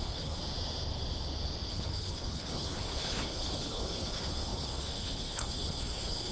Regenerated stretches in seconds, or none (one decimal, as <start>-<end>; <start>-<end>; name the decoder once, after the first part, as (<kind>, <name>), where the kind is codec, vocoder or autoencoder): 0.0-0.4 (codec, HILCodec); 1.7-6.3

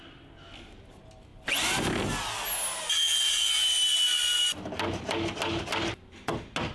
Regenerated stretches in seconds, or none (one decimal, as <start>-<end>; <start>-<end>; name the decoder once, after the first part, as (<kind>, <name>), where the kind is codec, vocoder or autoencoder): none

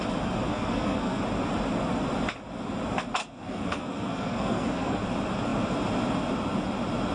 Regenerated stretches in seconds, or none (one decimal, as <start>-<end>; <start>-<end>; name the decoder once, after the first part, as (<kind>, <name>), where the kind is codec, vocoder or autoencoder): 0.5-1.2 (codec, SNAC); 3.2-5.0

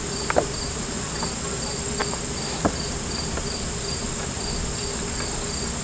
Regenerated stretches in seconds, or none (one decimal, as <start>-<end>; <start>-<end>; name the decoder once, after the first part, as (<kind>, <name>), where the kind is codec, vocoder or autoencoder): none

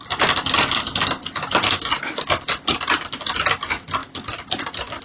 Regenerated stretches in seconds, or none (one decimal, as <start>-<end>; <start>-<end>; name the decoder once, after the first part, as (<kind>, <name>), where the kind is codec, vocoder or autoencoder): none

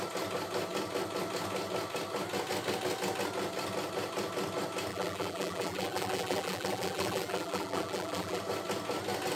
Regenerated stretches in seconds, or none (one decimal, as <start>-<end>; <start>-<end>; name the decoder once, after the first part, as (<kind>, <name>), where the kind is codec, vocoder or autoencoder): 4.9-8.4 (vocoder, BigVGAN v2)

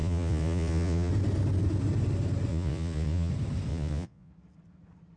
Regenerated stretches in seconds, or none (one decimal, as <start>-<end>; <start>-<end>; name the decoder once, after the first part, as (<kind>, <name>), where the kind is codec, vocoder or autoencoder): 0.0-1.1 (vocoder, Vocos); 2.5-3.3; 3.7-4.3

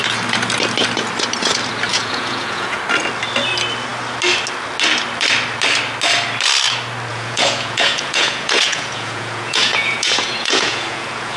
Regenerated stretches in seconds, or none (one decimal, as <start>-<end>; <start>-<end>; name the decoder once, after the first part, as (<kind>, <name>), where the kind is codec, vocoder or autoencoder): 1.9-2.8 (vocoder, Vocos); 7.1-11.4